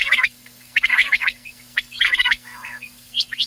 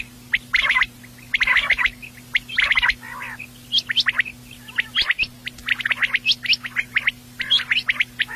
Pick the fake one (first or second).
first